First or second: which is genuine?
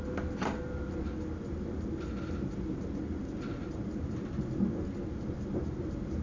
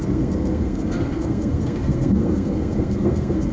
first